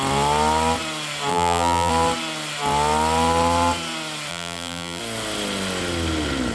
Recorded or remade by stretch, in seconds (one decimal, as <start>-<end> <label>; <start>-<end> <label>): 0.0-1.3 recorded; 1.3-1.9 remade; 1.9-4.3 recorded; 4.3-5.0 remade; 5.0-6.5 recorded